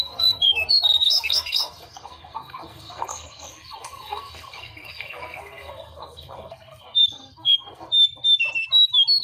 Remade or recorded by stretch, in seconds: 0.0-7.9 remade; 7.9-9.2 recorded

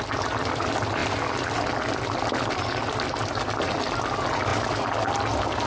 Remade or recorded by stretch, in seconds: 0.0-5.7 recorded

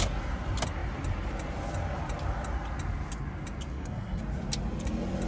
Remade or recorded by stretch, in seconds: 0.0-3.7 recorded; 3.7-4.2 remade; 4.2-5.3 recorded

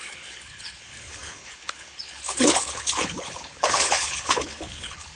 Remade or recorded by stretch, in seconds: 0.0-5.2 remade

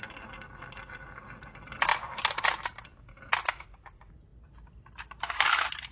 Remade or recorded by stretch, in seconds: 0.0-5.9 recorded

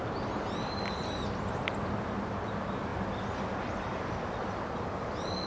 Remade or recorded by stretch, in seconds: 0.0-5.5 recorded

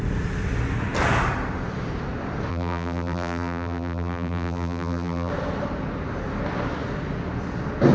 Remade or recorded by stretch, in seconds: 0.0-2.5 recorded; 2.5-5.3 remade; 5.3-7.9 recorded